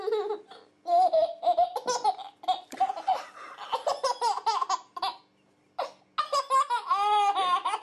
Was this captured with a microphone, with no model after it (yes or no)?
yes